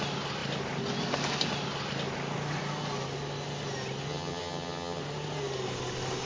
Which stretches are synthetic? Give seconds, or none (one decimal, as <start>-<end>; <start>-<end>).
4.1-5.0

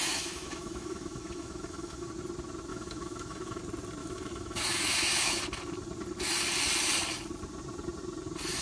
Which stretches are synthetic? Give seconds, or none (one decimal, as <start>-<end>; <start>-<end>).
0.0-2.1; 2.7-3.6; 4.0-5.4